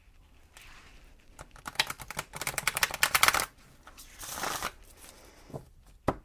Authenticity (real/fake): fake